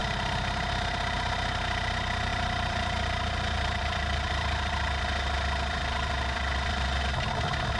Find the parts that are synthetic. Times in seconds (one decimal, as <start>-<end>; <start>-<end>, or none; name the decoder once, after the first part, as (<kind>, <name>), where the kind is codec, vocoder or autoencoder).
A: 0.0-0.7 (vocoder, BigVGAN v2); 2.3-7.0